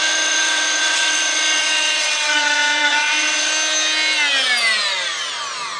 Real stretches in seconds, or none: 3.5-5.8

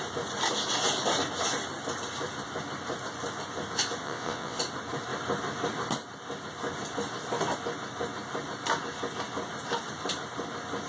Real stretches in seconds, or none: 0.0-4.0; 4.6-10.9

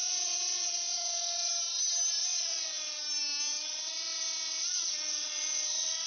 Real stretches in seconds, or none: 1.5-2.2; 3.0-3.5

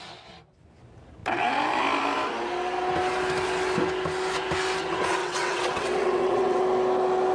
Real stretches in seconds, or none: 0.0-5.2; 6.6-7.3